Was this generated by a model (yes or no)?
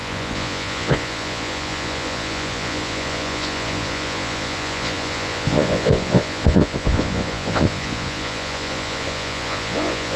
yes